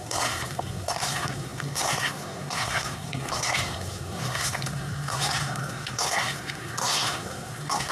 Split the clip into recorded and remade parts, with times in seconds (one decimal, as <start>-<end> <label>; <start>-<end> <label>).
0.0-7.9 remade